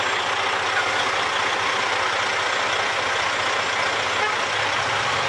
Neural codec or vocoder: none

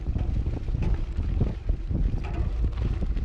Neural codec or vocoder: vocoder, BigVGAN v2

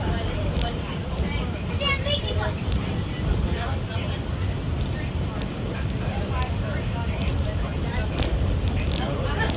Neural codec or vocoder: vocoder, BigVGAN v2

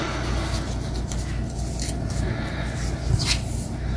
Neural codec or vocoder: none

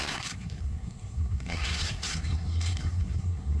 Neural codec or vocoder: codec, SNAC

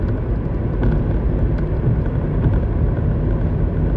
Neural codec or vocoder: none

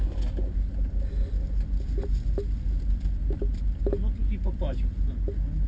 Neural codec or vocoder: none